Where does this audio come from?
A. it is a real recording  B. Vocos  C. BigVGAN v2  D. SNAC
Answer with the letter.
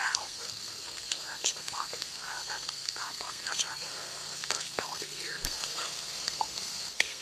D